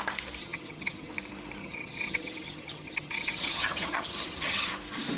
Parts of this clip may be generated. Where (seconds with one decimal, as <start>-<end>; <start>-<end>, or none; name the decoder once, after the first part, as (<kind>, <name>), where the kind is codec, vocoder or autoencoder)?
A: 0.4-1.1 (vocoder, HiFi-GAN); 1.6-4.7